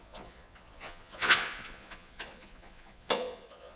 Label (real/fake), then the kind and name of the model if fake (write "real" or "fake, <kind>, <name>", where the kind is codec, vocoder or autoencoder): fake, vocoder, Vocos